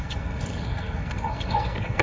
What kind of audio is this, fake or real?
fake